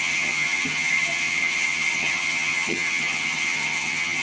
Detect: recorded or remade remade